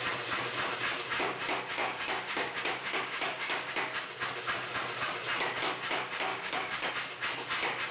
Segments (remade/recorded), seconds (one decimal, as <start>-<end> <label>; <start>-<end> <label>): 0.0-1.8 recorded; 1.8-3.7 remade; 3.7-6.3 recorded; 6.3-6.9 remade; 6.9-7.9 recorded